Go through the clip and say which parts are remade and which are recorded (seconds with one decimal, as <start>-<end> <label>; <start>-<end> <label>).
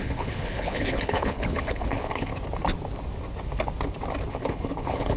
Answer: 0.0-2.3 remade; 2.3-4.3 recorded; 4.3-5.2 remade